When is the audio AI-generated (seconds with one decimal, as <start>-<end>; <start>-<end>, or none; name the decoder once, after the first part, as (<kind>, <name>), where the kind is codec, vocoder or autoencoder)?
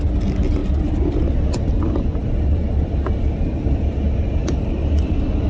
2.2-4.0 (vocoder, BigVGAN v2); 4.4-5.1